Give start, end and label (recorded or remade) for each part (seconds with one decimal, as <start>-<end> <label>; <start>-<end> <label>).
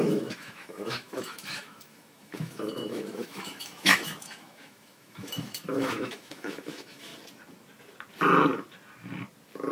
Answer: 0.0-7.1 remade; 7.1-9.7 recorded